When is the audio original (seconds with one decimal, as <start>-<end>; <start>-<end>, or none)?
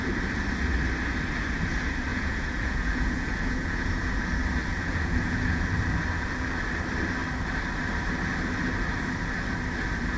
0.0-2.1; 4.2-4.7; 5.6-10.2